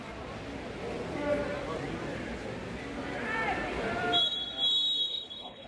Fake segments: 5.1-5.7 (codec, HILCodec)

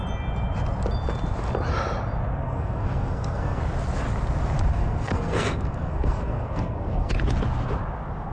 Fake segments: 2.4-3.6 (codec, SNAC); 4.7-7.1

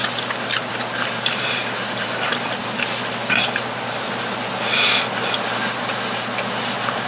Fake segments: 0.7-2.6 (vocoder, BigVGAN v2)

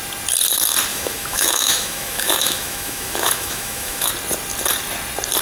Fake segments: 0.9-4.1 (autoencoder, DAC-VAE)

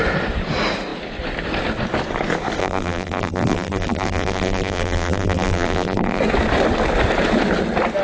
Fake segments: 2.6-6.2 (vocoder, BigVGAN v2)

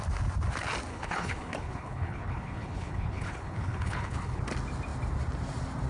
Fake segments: 0.9-4.4 (codec, HILCodec)

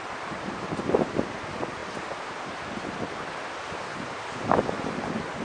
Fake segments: none

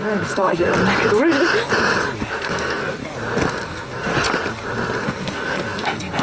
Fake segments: 0.0-0.7 (codec, SNAC); 2.4-3.0; 3.5-4.1; 5.0-6.2